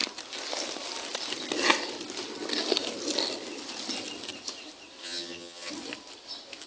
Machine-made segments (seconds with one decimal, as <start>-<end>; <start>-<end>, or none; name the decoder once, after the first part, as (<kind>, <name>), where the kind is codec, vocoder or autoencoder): 5.0-5.7 (vocoder, HiFi-GAN)